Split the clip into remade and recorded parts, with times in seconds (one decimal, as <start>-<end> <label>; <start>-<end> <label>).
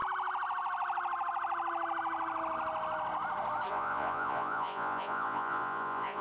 0.0-3.7 recorded; 3.7-6.2 remade